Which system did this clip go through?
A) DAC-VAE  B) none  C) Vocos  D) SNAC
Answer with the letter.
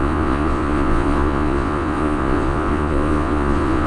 C